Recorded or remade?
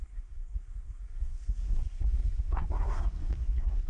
remade